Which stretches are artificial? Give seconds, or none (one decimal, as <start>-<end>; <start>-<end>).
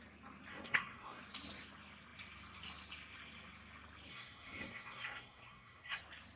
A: 0.5-1.2; 4.1-6.0